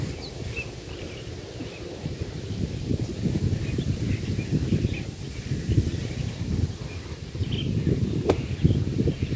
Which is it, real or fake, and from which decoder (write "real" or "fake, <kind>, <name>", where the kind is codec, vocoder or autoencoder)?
real